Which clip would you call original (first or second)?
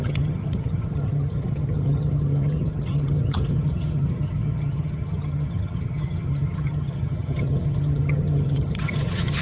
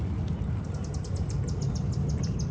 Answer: second